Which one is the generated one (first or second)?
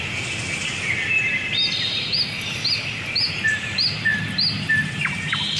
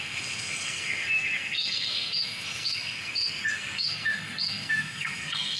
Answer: second